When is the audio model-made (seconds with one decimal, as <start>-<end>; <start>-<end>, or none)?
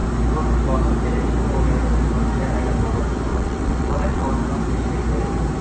3.3-4.3